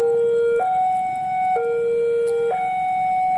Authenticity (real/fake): real